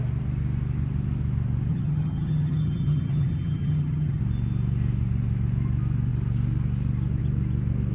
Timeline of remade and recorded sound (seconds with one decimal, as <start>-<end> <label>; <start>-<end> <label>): 0.0-1.7 recorded; 1.7-4.2 remade; 4.2-7.9 recorded